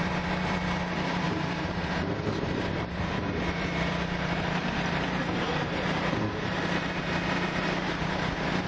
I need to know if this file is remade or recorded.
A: remade